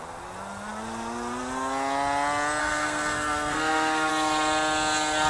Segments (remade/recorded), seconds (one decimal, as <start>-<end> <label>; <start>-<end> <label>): 0.0-2.6 recorded; 2.6-4.1 remade; 4.1-5.3 recorded